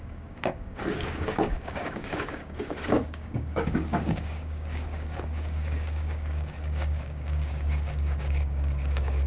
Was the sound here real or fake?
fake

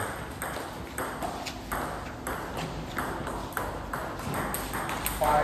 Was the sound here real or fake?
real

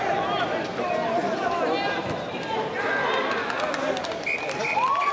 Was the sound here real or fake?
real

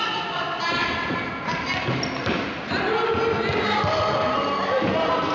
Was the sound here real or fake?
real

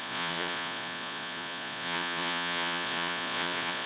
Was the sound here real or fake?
fake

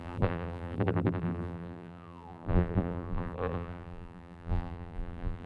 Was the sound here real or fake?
fake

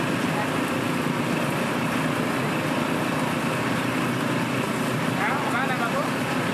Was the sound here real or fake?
real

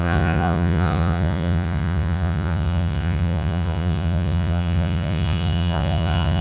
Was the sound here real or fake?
fake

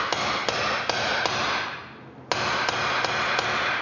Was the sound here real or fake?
real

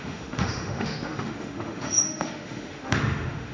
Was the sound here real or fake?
fake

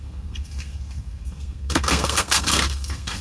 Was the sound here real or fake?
fake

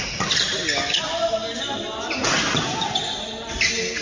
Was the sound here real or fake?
real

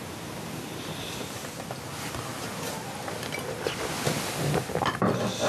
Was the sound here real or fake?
real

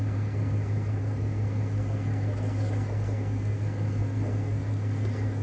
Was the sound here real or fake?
fake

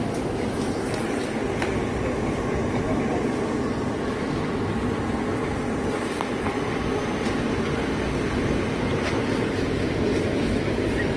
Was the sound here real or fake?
real